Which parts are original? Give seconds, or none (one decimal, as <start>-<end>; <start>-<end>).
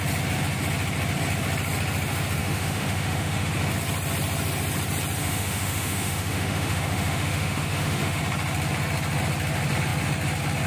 0.0-2.4; 3.5-5.2; 8.2-10.7